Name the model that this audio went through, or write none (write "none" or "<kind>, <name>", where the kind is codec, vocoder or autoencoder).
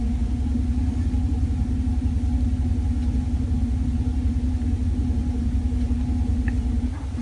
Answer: none